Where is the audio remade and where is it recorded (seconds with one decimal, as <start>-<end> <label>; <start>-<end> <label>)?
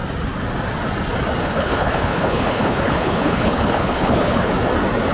0.0-1.4 recorded; 1.4-4.5 remade; 4.5-5.1 recorded